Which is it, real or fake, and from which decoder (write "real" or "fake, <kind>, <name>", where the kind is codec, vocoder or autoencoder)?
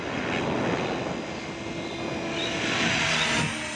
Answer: real